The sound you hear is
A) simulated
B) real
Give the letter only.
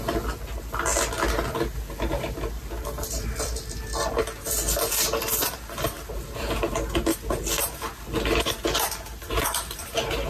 B